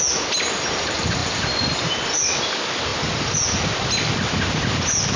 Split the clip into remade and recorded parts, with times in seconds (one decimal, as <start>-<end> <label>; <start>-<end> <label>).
0.0-5.2 recorded